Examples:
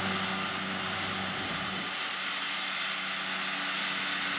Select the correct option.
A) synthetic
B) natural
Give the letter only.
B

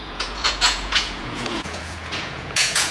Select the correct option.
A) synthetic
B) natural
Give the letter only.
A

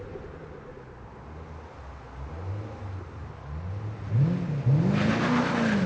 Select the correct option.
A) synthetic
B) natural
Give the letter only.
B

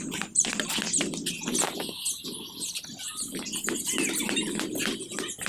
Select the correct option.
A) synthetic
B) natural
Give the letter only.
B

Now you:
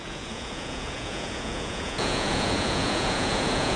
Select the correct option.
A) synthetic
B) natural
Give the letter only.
A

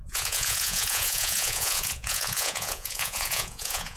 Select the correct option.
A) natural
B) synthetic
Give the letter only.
B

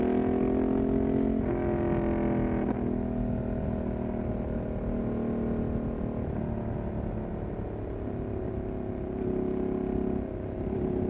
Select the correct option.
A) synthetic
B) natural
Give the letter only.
B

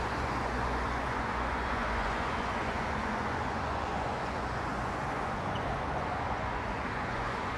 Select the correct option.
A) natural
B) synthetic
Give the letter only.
B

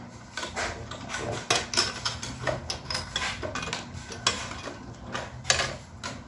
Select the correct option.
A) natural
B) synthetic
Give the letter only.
A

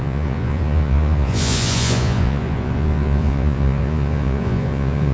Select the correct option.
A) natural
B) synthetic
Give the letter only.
B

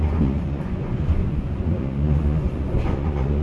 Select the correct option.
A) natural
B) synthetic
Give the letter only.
B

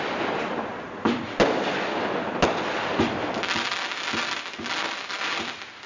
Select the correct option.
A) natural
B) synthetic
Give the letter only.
A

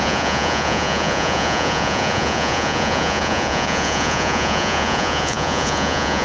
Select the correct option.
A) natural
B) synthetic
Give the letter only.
B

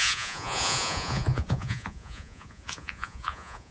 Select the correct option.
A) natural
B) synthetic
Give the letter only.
B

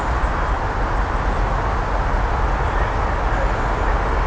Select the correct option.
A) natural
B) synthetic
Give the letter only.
A